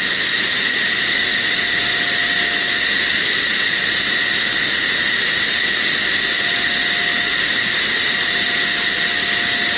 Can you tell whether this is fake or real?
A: real